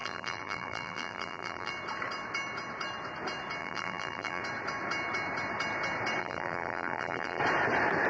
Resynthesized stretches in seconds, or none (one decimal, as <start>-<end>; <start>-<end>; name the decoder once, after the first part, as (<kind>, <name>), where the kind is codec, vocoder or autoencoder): 0.0-1.7 (vocoder, BigVGAN v2); 3.6-4.4; 6.2-7.4